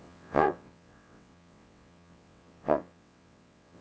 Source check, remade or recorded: remade